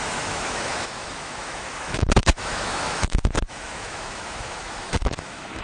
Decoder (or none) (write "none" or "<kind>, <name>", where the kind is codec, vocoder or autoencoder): autoencoder, DAC-VAE